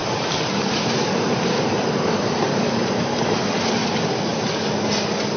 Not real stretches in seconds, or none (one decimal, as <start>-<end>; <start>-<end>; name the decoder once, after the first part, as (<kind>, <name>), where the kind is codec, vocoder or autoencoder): 0.0-3.2 (vocoder, BigVGAN v2); 4.3-4.9